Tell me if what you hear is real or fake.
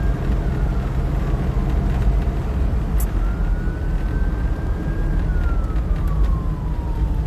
real